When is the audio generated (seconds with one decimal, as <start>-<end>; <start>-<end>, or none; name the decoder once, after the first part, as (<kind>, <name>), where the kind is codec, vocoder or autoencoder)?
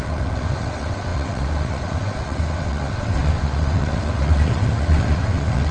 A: 0.0-5.7 (vocoder, WaveNeXt)